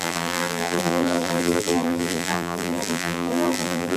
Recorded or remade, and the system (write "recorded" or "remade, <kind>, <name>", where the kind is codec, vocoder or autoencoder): remade, vocoder, BigVGAN v2